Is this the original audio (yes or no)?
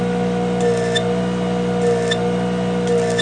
yes